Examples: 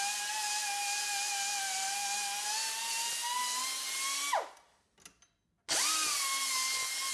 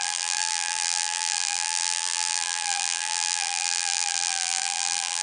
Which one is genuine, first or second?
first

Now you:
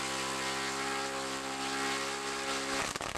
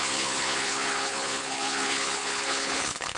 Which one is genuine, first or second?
first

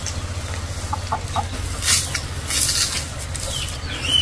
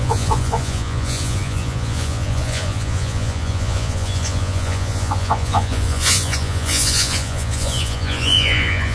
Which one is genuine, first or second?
first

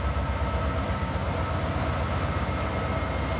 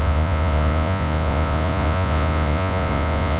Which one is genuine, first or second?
first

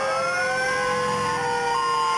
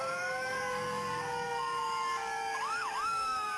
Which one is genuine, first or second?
first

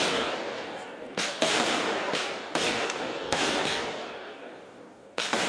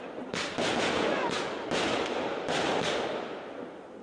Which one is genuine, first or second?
second